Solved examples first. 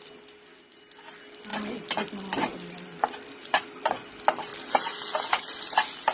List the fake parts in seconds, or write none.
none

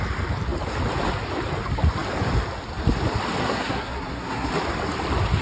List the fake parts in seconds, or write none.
3.4-4.5 (codec, SNAC)

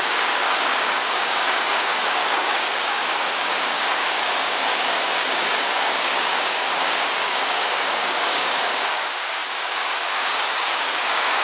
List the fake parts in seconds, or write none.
0.0-11.4 (codec, DAC)

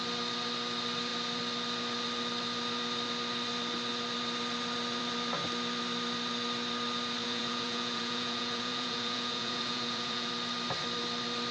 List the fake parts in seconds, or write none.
7.2-10.3 (vocoder, Vocos)